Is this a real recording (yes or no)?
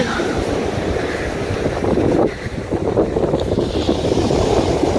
yes